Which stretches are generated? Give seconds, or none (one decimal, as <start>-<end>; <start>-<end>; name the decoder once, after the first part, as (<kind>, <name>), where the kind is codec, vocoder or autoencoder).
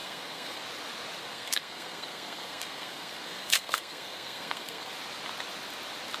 0.0-0.6 (codec, SNAC); 1.2-4.9